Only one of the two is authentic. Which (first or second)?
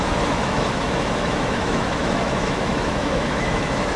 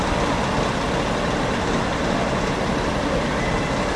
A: second